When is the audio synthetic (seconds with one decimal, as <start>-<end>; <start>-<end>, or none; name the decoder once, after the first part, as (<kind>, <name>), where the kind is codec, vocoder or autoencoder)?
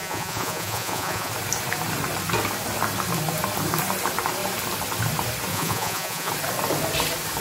0.0-1.3 (vocoder, Vocos); 5.5-6.3